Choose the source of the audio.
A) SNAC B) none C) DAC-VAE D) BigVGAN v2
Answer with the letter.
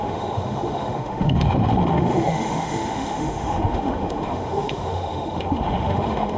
C